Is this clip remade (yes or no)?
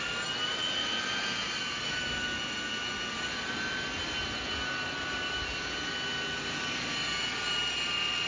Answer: no